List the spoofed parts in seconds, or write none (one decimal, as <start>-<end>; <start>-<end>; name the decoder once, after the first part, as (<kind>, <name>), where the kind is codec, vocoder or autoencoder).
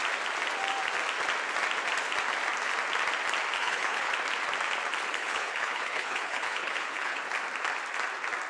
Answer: 3.6-4.1 (codec, HILCodec); 5.2-7.2